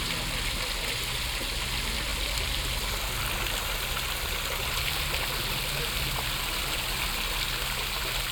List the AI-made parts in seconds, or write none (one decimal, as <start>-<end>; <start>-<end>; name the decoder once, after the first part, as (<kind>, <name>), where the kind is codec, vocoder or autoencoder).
none